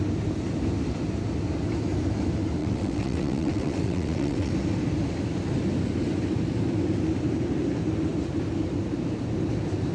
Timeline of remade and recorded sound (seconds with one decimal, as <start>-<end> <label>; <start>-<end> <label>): 0.0-2.6 recorded; 2.6-4.5 remade; 4.5-9.9 recorded